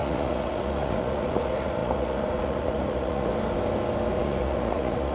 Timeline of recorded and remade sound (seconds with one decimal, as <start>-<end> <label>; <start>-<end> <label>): 0.0-3.3 remade; 3.3-4.2 recorded; 4.2-5.1 remade